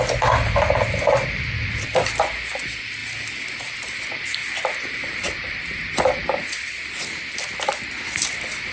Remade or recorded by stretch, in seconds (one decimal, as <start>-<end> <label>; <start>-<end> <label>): 0.0-8.7 recorded